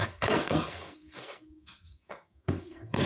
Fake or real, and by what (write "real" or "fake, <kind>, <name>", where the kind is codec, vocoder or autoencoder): fake, codec, SNAC